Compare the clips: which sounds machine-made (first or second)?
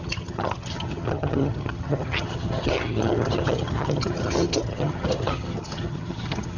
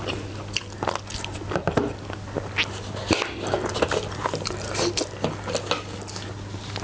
first